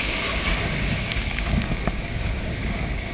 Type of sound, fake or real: fake